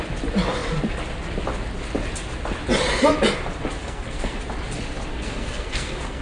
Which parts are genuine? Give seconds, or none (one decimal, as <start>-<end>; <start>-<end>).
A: 0.0-3.8; 4.4-5.1